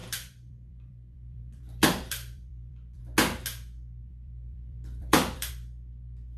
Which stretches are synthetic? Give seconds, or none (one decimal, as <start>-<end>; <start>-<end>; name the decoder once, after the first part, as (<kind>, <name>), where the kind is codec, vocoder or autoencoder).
0.0-3.0 (vocoder, BigVGAN v2); 4.1-5.5